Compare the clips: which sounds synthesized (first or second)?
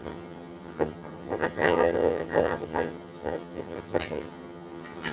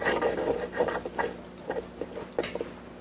first